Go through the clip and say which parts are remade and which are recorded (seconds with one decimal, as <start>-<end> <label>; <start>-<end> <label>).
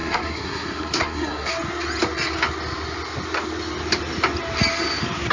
0.0-1.5 remade; 1.5-5.3 recorded